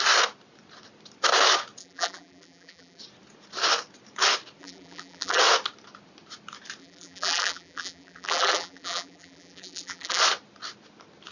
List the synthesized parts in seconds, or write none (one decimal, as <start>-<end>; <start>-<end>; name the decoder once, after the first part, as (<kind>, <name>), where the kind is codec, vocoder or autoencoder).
1.8-3.0 (vocoder, BigVGAN v2); 4.6-5.4; 6.8-10.2